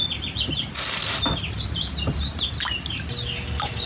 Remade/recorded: recorded